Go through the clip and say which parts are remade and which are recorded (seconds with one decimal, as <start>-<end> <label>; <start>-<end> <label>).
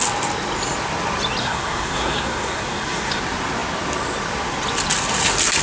0.0-1.4 recorded; 1.4-3.2 remade; 3.2-5.6 recorded